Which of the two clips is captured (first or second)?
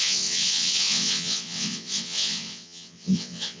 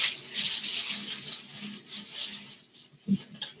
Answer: second